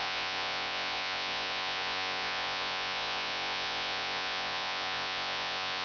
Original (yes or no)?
no